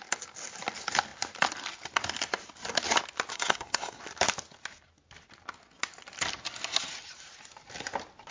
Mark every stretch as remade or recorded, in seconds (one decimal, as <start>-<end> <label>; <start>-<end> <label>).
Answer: 0.0-3.3 recorded; 3.3-4.0 remade; 4.0-8.3 recorded